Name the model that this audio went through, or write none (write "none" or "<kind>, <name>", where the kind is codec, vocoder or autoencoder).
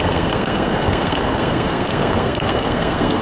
codec, SNAC